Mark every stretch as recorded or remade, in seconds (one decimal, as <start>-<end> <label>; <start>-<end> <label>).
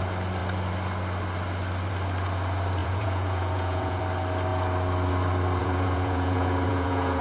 0.0-2.8 recorded; 2.8-4.0 remade; 4.0-5.6 recorded; 5.6-7.2 remade